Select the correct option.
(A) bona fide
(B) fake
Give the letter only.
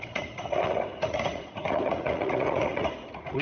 B